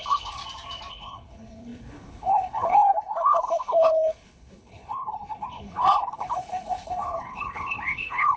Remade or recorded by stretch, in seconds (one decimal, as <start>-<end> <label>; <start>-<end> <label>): 0.0-0.4 remade; 0.4-0.9 recorded; 0.9-8.4 remade